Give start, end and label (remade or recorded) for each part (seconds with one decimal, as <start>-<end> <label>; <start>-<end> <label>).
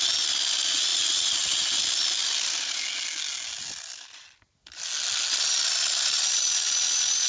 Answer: 0.0-7.3 recorded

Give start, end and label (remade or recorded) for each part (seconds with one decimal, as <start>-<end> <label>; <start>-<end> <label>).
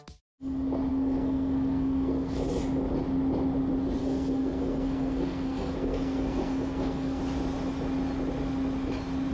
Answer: 0.0-0.9 recorded; 0.9-2.6 remade; 2.6-4.0 recorded; 4.0-7.2 remade; 7.2-9.3 recorded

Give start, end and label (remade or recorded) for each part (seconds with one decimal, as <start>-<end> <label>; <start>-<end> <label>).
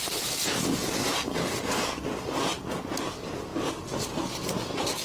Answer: 0.0-5.0 recorded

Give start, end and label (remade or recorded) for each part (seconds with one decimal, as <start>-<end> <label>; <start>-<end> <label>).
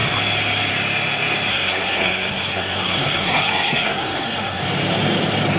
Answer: 0.0-1.5 recorded; 1.5-4.6 remade; 4.6-5.6 recorded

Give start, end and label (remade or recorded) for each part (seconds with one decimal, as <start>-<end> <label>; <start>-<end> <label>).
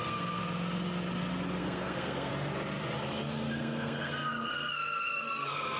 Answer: 0.0-0.4 remade; 0.4-1.6 recorded; 1.6-2.3 remade; 2.3-3.6 recorded; 3.6-5.8 remade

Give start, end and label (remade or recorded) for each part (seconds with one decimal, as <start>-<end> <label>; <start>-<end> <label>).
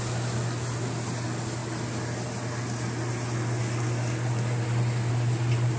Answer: 0.0-5.8 recorded